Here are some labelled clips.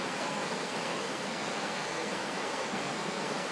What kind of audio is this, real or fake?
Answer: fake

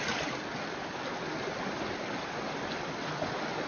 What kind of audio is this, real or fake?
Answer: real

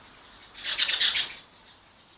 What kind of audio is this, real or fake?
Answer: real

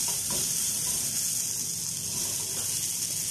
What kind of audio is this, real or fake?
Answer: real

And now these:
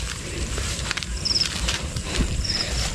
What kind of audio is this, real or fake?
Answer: fake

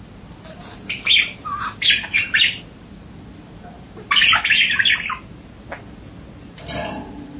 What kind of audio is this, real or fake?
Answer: real